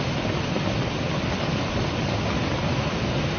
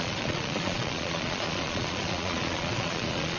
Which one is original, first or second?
first